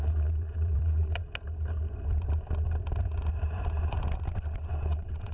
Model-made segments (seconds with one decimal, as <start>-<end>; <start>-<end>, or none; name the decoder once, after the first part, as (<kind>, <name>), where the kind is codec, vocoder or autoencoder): 0.0-1.2 (vocoder, WaveNeXt); 4.3-5.3